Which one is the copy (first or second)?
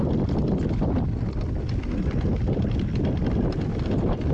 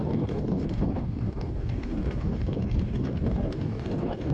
second